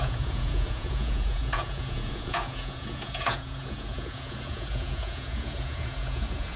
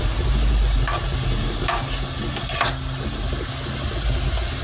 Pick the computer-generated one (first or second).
first